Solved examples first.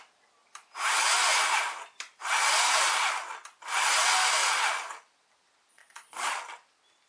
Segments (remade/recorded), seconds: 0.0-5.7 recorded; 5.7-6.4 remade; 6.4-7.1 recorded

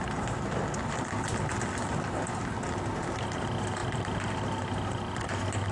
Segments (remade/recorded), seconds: 0.0-5.7 recorded

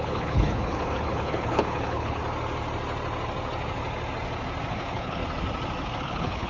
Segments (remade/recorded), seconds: 0.0-2.2 remade; 2.2-4.7 recorded; 4.7-5.2 remade; 5.2-6.0 recorded; 6.0-6.5 remade

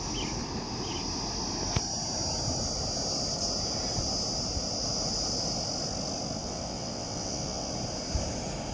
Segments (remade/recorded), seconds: 0.0-6.4 recorded; 6.4-7.7 remade; 7.7-8.7 recorded